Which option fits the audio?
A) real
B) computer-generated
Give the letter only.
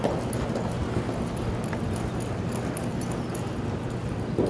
A